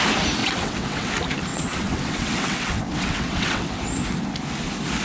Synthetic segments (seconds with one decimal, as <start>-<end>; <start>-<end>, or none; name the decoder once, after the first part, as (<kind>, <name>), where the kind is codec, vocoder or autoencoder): 0.4-1.1 (vocoder, WaveNeXt); 1.5-3.9